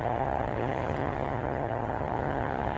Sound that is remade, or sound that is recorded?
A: remade